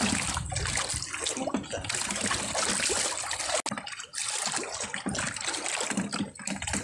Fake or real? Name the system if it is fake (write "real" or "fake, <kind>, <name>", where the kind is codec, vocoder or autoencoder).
real